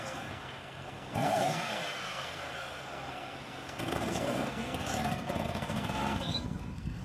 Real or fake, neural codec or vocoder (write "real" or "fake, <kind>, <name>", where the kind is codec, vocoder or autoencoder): fake, codec, SNAC